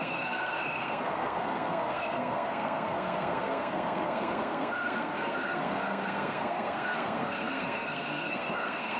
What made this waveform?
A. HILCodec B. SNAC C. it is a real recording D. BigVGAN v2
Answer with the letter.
B